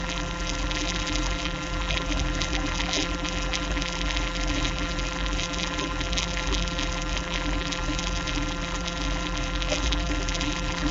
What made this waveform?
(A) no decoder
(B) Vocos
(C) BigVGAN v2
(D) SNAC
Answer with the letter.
C